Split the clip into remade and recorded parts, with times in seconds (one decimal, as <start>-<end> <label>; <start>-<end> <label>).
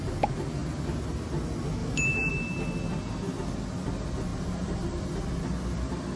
0.0-1.8 recorded; 1.8-2.3 remade; 2.3-4.3 recorded; 4.3-5.2 remade; 5.2-6.2 recorded